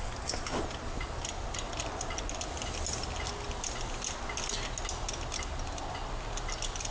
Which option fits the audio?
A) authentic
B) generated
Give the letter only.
A